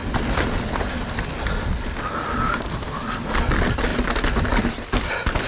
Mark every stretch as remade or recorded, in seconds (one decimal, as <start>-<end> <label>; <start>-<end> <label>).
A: 0.0-5.5 recorded